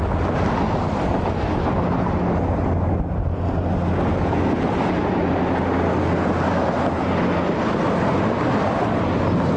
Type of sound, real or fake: real